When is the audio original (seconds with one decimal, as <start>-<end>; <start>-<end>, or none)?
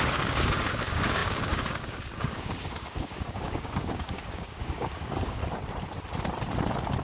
5.4-7.0